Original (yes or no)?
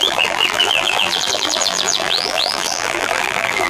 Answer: no